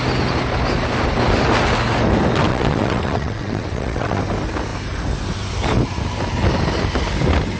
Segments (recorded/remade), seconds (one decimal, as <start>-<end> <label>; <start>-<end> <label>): 0.0-2.5 recorded; 2.5-4.2 remade; 4.2-7.6 recorded